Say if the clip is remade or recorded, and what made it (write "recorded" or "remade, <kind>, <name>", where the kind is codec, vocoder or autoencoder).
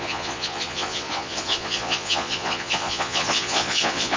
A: remade, vocoder, Vocos